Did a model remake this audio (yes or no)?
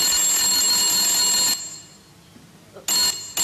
no